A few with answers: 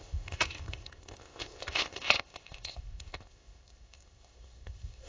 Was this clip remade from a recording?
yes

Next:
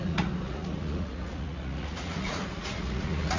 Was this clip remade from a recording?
yes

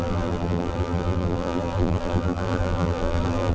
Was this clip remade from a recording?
yes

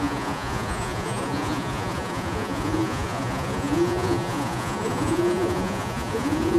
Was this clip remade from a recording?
yes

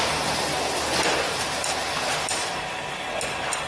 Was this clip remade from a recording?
no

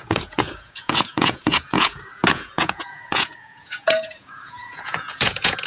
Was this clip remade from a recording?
yes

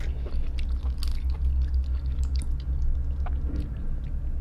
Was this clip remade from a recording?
no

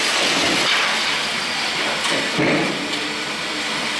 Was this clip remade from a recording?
no